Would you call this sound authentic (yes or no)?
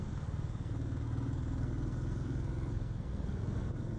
no